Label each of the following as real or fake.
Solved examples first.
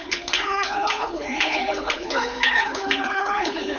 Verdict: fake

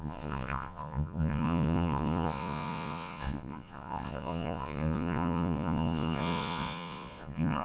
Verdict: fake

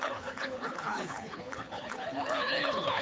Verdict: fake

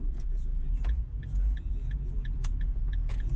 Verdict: fake